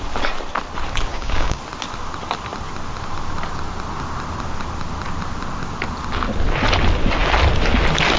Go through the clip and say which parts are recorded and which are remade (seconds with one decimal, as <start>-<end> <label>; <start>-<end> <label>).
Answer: 0.0-1.1 recorded; 1.1-1.6 remade; 1.6-8.2 recorded